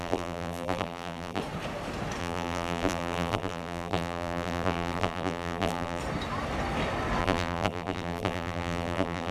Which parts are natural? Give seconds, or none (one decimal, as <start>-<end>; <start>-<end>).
1.4-2.2; 6.0-7.2